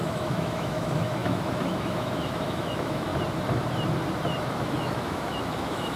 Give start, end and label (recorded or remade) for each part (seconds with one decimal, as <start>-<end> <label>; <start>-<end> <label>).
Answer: 0.0-3.1 remade; 3.1-4.4 recorded; 4.4-6.0 remade